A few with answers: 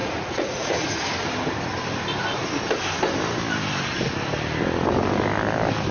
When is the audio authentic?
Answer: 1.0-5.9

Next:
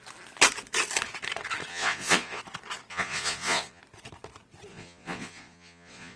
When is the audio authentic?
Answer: 0.0-1.7; 2.4-2.9; 3.8-4.7

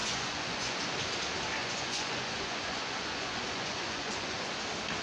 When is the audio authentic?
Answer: 0.8-1.6; 4.6-5.0

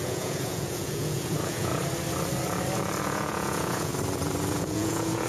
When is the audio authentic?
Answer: 1.7-3.0; 3.9-4.5

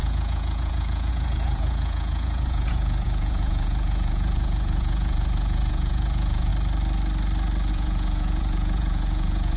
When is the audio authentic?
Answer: 6.5-7.7

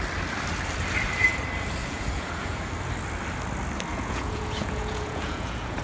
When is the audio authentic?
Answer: 0.0-1.8; 2.6-3.9